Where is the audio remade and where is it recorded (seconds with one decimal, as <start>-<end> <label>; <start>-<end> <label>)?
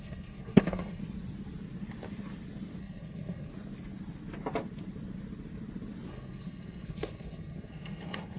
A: 0.0-1.0 remade; 1.0-2.8 recorded; 2.8-3.5 remade; 3.5-6.1 recorded; 6.1-8.4 remade